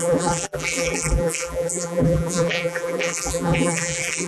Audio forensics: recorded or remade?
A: remade